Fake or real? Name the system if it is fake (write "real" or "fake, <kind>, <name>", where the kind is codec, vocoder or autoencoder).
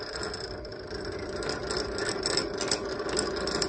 real